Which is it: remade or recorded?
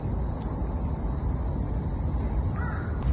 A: recorded